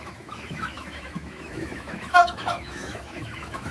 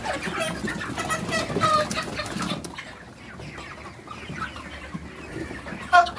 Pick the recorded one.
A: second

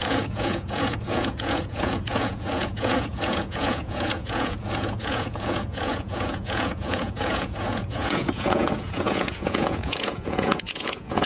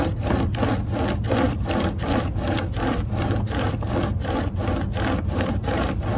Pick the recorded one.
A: second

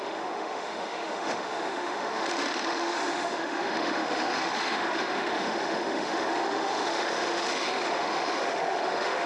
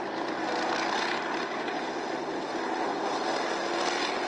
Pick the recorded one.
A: second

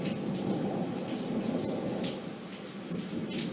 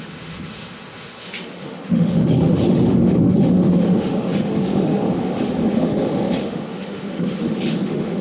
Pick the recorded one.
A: first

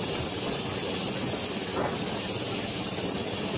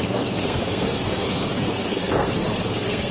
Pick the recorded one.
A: first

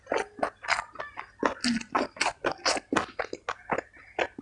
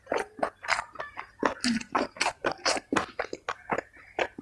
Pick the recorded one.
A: first